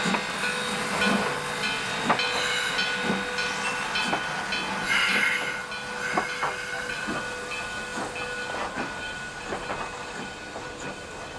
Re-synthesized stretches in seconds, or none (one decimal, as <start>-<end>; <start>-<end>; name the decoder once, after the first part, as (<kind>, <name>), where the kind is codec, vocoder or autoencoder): none

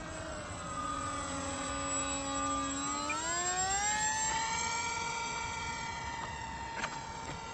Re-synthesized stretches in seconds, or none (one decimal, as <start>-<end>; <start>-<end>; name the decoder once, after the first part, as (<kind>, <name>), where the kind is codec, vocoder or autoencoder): 0.0-1.7 (vocoder, WaveNeXt); 4.3-7.5